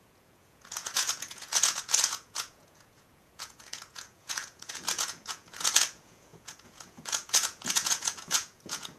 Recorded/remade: remade